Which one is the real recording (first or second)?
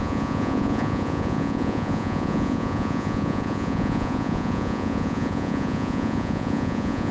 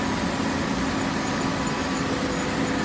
second